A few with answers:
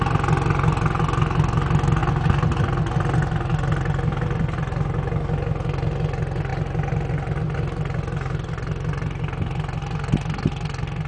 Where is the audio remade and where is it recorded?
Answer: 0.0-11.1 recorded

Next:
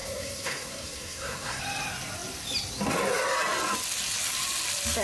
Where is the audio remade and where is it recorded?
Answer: 0.0-1.6 remade; 1.6-5.0 recorded

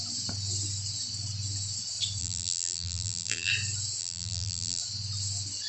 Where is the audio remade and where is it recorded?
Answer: 0.0-2.2 recorded; 2.2-3.5 remade; 3.5-4.0 recorded; 4.0-4.8 remade; 4.8-5.7 recorded

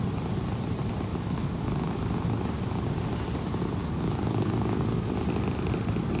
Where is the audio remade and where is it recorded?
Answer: 0.0-1.1 recorded; 1.1-2.1 remade; 2.1-3.8 recorded; 3.8-5.1 remade; 5.1-6.2 recorded

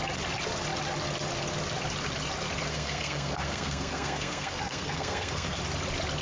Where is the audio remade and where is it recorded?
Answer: 0.0-2.7 recorded; 2.7-5.6 remade; 5.6-6.2 recorded

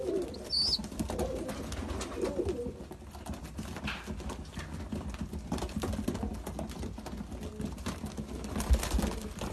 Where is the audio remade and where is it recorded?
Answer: 0.0-9.5 recorded

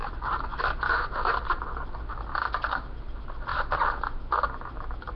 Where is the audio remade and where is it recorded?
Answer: 0.0-5.2 recorded